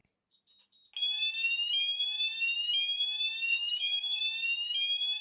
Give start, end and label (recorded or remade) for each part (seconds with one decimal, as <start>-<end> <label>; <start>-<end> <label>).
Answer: 0.0-3.5 recorded; 3.5-4.2 remade; 4.2-5.2 recorded